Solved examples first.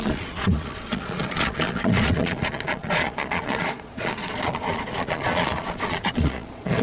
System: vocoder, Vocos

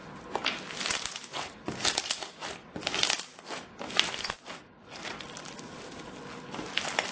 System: none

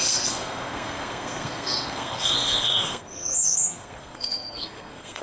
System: codec, SNAC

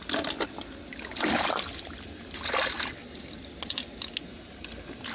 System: none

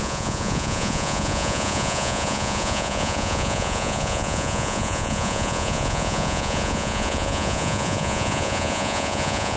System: vocoder, Vocos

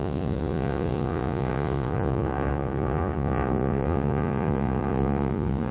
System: vocoder, Vocos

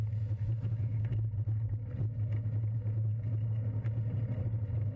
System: none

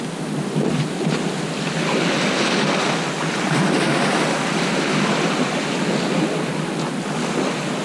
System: none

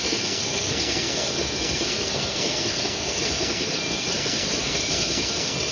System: codec, SNAC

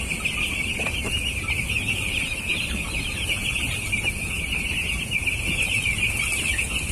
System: none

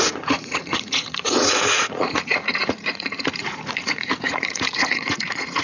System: vocoder, Vocos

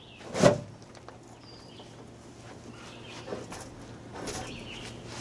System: none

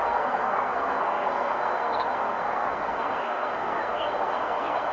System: codec, SNAC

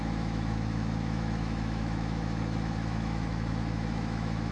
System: autoencoder, DAC-VAE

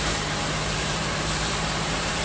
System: vocoder, BigVGAN v2